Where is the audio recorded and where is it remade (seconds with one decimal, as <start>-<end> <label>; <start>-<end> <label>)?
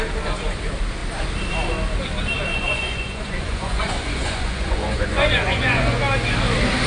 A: 0.0-2.5 recorded; 2.5-6.0 remade; 6.0-6.9 recorded